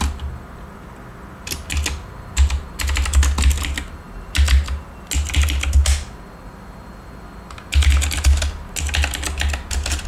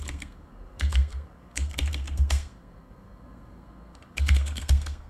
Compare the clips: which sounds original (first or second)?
first